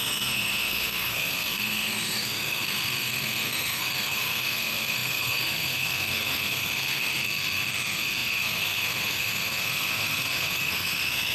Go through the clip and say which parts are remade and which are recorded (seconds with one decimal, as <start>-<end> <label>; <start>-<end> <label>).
0.0-11.3 remade